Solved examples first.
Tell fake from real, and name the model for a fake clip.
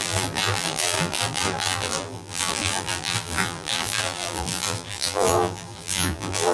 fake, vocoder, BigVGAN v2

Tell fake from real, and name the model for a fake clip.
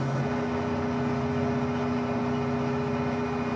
real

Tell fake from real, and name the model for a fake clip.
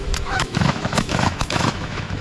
fake, autoencoder, DAC-VAE